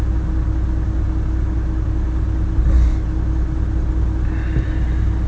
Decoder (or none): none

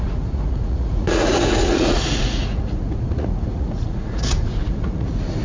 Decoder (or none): vocoder, Vocos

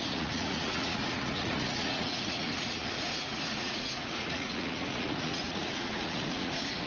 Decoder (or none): vocoder, Vocos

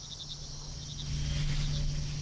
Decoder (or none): none